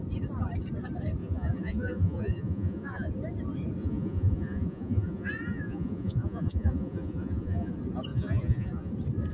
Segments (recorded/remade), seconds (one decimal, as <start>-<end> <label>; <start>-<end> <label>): 0.0-1.2 recorded; 1.2-3.1 remade; 3.1-3.8 recorded; 3.8-7.7 remade; 7.7-8.1 recorded; 8.1-8.9 remade; 8.9-9.3 recorded